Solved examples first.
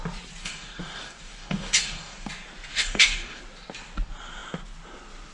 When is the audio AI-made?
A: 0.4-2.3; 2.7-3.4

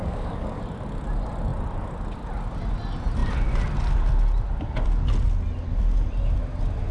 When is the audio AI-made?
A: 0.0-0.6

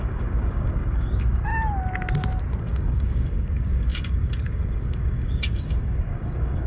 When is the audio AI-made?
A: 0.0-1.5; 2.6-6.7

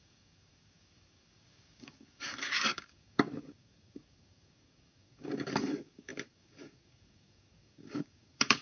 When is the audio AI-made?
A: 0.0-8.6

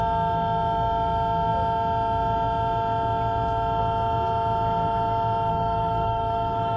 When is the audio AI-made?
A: 5.5-6.8

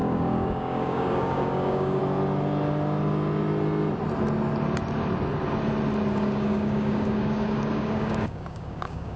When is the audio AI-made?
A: 0.0-2.0; 6.1-9.2

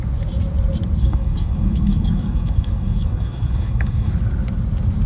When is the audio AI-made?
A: 1.0-4.1

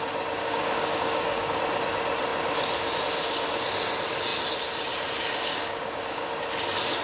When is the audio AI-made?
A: 0.4-1.6; 5.5-6.3